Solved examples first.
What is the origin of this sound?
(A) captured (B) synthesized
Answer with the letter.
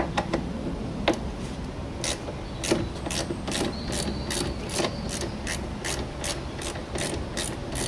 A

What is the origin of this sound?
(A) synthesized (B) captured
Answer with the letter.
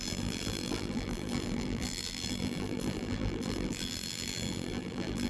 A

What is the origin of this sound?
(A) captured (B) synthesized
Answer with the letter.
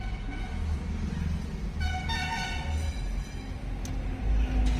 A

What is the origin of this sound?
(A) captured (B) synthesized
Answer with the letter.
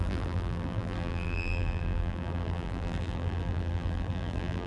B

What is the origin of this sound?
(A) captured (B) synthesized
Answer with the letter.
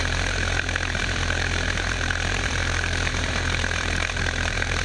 B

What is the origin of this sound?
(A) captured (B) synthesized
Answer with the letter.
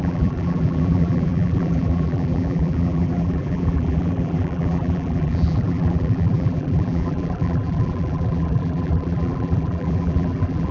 B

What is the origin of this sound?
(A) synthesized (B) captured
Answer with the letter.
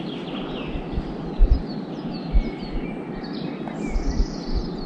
B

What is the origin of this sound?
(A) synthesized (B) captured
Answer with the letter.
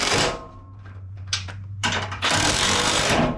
A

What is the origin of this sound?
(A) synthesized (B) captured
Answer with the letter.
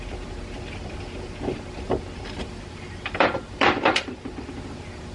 A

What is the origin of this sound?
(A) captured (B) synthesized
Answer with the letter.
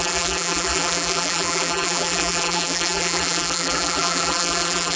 B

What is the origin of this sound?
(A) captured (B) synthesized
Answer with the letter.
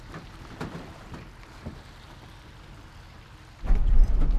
B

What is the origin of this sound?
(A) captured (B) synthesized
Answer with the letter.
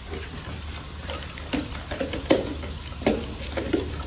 B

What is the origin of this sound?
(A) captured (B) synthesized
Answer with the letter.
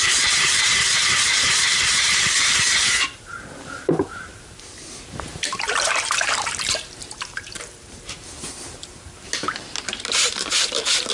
B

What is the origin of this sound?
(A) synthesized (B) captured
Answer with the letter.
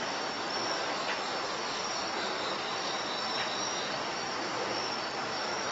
A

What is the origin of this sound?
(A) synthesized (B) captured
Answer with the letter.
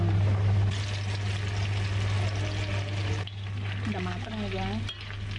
B